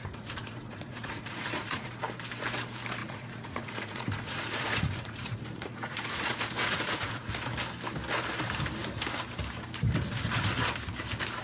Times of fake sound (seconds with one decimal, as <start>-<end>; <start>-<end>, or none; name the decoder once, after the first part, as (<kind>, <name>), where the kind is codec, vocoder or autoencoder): 0.0-2.0 (vocoder, Vocos); 3.0-7.3